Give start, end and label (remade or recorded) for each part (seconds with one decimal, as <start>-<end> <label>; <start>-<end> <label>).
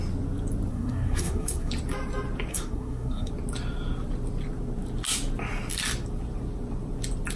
0.0-0.7 recorded; 0.7-1.7 remade; 1.7-2.5 recorded; 2.5-3.3 remade; 3.3-7.4 recorded